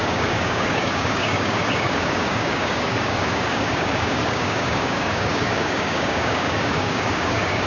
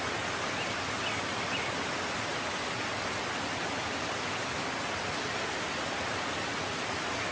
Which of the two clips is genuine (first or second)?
second